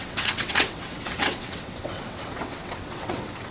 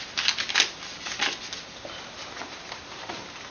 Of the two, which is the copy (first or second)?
first